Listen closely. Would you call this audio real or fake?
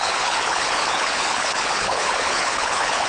fake